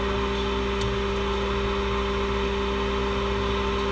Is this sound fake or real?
real